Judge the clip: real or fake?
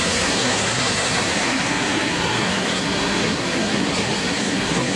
fake